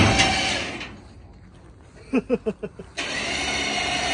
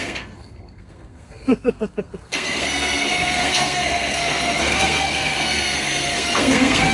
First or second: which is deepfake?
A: second